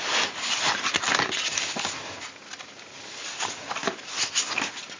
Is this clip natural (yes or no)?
yes